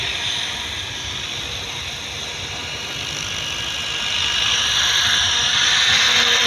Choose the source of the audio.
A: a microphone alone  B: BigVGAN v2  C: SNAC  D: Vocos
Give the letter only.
A